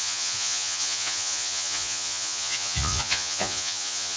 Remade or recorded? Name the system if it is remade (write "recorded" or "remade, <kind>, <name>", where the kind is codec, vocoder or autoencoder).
remade, vocoder, Vocos